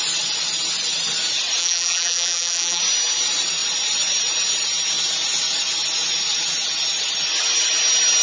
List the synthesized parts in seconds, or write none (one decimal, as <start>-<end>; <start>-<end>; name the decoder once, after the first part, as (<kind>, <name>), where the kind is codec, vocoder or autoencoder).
1.6-2.8 (vocoder, BigVGAN v2)